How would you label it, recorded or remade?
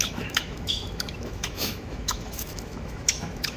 remade